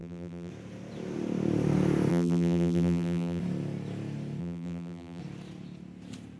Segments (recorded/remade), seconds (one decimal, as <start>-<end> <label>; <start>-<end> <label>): 0.0-0.5 remade; 0.5-2.1 recorded; 2.1-3.4 remade; 3.4-4.4 recorded; 4.4-5.2 remade; 5.2-6.4 recorded